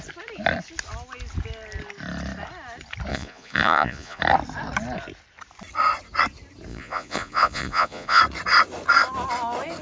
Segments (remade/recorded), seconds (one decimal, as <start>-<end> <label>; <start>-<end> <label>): 0.0-3.1 recorded; 3.1-4.2 remade; 4.2-6.7 recorded; 6.7-8.2 remade; 8.2-9.8 recorded